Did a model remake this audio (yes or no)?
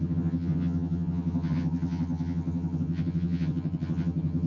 yes